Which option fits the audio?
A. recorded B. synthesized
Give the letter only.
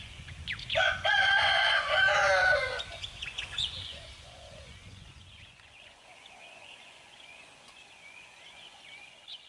B